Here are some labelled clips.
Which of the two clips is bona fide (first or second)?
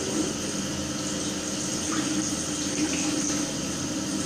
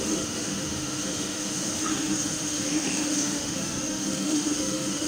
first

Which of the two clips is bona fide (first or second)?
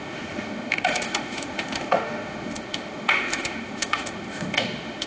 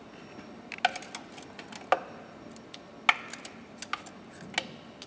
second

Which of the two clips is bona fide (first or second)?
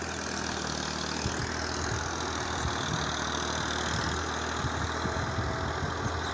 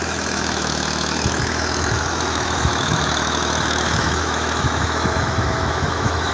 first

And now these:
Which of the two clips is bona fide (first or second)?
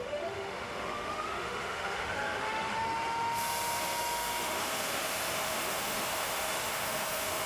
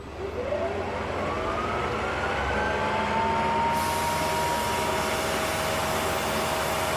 second